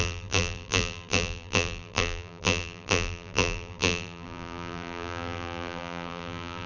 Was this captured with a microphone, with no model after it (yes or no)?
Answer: no